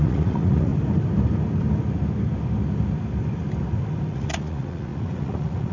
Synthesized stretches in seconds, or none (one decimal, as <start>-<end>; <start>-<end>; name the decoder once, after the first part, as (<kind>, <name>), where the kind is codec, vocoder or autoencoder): 0.0-0.7 (vocoder, Vocos); 4.1-5.7